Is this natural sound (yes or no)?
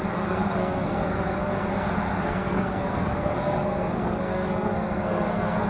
no